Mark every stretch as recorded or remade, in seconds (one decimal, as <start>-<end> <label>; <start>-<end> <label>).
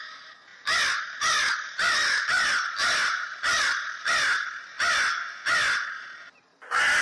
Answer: 0.0-7.0 recorded